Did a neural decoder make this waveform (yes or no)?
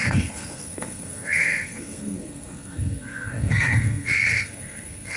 yes